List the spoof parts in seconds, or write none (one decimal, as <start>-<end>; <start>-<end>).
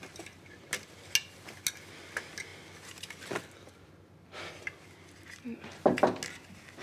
none